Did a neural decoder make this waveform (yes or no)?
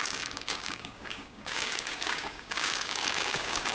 yes